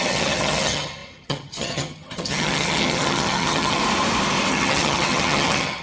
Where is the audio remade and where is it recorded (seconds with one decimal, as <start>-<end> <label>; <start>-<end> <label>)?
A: 0.0-3.8 remade; 3.8-4.5 recorded; 4.5-5.8 remade